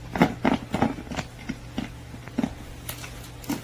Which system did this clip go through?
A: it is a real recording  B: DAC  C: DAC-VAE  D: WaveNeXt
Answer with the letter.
A